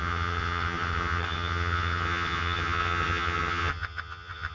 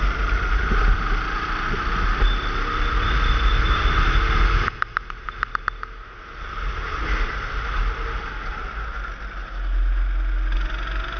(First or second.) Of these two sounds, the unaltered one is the second